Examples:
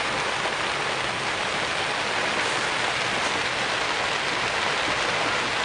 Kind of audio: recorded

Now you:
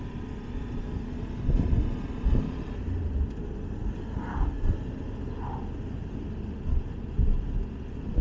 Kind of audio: recorded